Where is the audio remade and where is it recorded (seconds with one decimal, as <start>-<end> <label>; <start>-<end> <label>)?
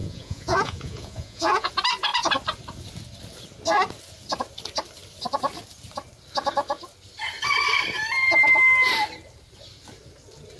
0.0-1.7 remade; 1.7-10.6 recorded